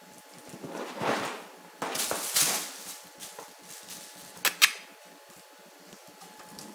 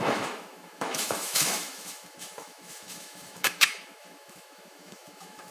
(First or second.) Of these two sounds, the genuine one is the first